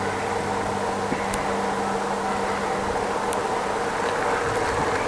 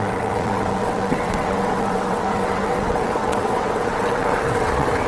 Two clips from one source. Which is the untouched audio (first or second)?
first